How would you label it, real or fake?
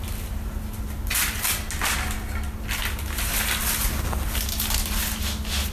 real